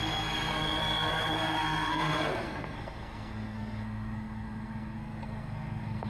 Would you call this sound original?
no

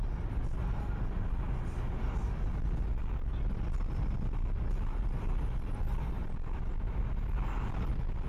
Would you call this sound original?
yes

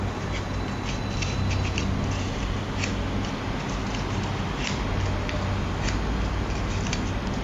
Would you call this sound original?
yes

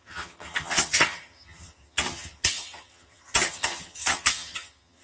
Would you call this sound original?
no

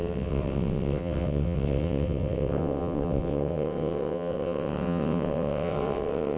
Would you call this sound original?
no